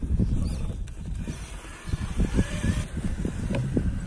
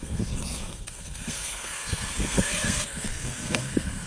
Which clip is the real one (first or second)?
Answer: first